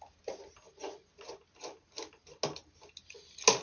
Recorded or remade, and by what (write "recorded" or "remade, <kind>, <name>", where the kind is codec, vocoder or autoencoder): recorded